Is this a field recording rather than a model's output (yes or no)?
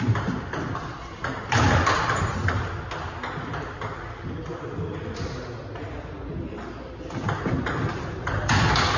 yes